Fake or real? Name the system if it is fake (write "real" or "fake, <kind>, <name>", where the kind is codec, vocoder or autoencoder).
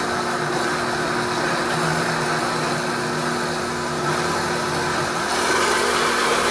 real